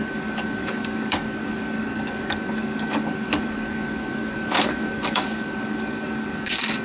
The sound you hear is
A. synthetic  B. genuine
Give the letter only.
A